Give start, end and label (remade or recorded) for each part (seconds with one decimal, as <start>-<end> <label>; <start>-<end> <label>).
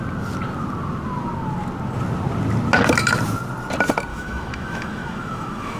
0.0-4.1 recorded; 4.1-5.8 remade